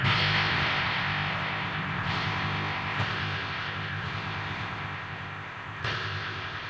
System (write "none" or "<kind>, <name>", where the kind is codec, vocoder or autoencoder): codec, ZipCodec